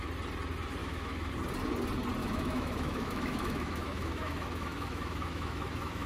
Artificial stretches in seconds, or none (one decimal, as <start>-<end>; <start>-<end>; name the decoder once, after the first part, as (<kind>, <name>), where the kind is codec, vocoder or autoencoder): 0.8-1.3 (autoencoder, DAC-VAE); 2.2-6.1

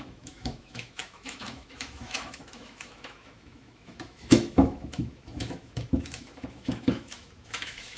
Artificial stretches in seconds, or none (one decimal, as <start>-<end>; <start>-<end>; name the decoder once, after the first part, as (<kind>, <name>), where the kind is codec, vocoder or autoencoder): 0.0-8.0 (autoencoder, DAC-VAE)

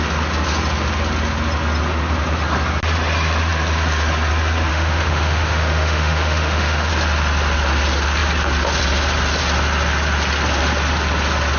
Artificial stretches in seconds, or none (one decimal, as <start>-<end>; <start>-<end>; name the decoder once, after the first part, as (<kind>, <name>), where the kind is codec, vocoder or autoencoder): 4.7-6.9 (autoencoder, DAC-VAE)

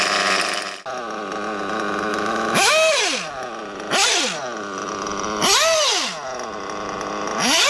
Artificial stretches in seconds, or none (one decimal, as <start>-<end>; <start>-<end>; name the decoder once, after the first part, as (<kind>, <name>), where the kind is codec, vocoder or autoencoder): 2.1-2.7 (autoencoder, DAC-VAE)

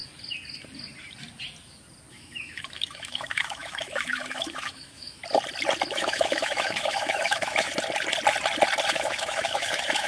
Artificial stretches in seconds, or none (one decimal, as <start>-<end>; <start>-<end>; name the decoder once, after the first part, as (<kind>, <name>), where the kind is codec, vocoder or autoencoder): 2.1-5.2 (autoencoder, DAC-VAE); 5.9-7.7; 8.9-10.1